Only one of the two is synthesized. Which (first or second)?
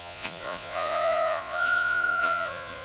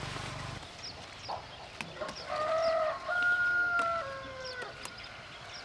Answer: first